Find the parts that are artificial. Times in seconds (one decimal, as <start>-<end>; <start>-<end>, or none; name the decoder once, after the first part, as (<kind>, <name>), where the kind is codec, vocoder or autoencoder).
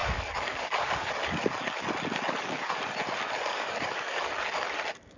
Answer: 0.0-1.1 (codec, DAC); 3.5-4.2